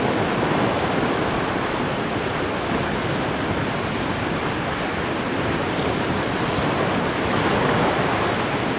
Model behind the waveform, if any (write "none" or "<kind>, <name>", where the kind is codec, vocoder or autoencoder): none